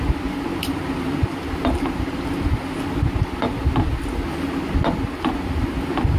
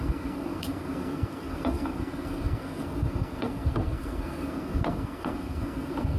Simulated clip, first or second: second